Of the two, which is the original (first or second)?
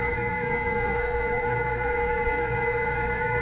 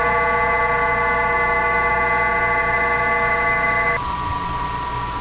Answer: second